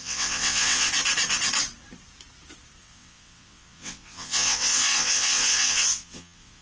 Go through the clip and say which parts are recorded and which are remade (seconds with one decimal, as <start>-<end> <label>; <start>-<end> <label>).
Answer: 0.0-0.9 remade; 0.9-2.8 recorded; 2.8-6.6 remade

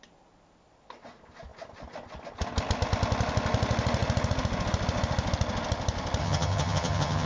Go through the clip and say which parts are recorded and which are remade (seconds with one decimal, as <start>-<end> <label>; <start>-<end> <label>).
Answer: 0.0-6.2 recorded; 6.2-7.3 remade

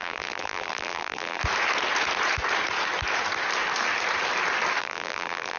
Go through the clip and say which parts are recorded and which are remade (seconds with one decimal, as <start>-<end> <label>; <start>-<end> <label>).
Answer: 0.0-1.4 remade; 1.4-4.8 recorded; 4.8-5.6 remade

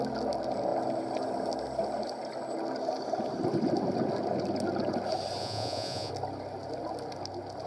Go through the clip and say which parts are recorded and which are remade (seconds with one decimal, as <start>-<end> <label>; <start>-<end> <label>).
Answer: 0.0-5.4 recorded; 5.4-6.1 remade; 6.1-7.7 recorded

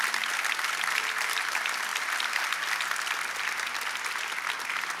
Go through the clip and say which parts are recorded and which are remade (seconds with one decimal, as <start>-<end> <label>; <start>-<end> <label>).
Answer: 0.0-5.0 recorded

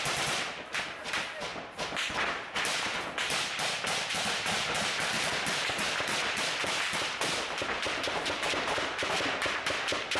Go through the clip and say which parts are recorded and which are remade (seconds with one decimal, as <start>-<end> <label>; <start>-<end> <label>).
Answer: 0.0-1.5 remade; 1.5-2.6 recorded; 2.6-10.2 remade

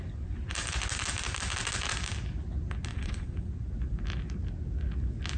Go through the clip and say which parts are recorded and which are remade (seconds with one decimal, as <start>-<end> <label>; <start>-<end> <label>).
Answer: 0.0-2.9 recorded; 2.9-3.5 remade; 3.5-5.4 recorded